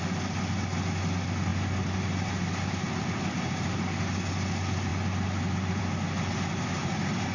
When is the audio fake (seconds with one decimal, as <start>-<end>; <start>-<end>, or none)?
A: none